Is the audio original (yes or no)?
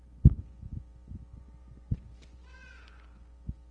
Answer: no